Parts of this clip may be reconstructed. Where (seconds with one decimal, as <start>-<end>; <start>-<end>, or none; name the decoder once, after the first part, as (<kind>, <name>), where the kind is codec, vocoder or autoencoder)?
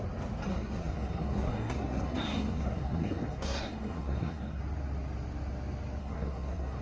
0.5-4.6 (codec, SNAC); 6.0-6.8